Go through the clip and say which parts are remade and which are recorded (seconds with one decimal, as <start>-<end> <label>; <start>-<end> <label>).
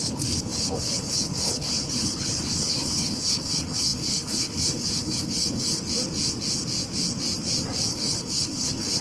0.0-5.8 remade; 5.8-7.9 recorded; 7.9-9.0 remade